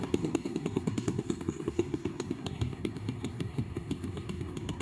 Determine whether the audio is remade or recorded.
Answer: remade